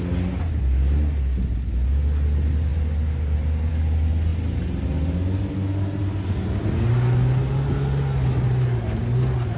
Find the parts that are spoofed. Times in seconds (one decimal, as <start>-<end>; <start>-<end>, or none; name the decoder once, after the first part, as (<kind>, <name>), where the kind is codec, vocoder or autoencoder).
none